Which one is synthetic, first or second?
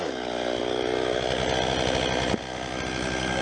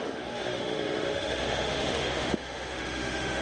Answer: second